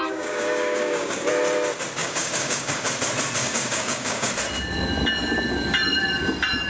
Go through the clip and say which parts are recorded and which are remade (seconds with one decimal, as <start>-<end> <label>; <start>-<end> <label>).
0.0-1.3 remade; 1.3-2.0 recorded; 2.0-2.9 remade; 2.9-3.4 recorded; 3.4-4.3 remade; 4.3-6.7 recorded